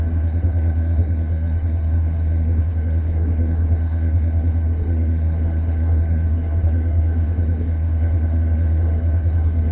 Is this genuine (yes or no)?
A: no